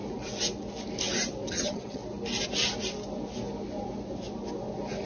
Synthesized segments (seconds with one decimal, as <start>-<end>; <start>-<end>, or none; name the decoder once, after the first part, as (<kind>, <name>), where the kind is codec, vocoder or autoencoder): 1.5-2.0 (vocoder, HiFi-GAN)